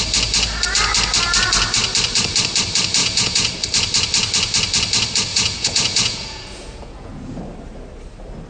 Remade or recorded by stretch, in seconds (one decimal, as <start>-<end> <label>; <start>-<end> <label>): 0.0-3.0 recorded; 3.0-3.5 remade; 3.5-5.3 recorded; 5.3-7.4 remade; 7.4-8.5 recorded